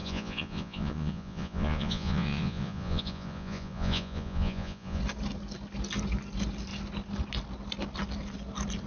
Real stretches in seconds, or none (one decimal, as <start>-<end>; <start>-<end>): 5.0-8.9